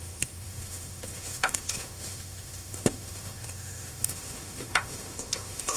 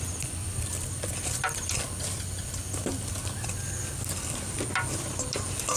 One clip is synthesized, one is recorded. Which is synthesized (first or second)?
first